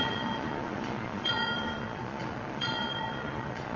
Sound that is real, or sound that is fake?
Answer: fake